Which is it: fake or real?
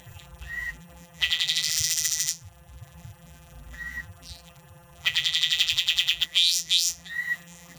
fake